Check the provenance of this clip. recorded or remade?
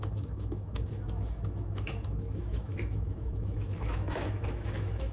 remade